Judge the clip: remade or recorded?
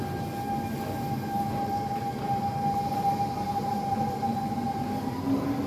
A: recorded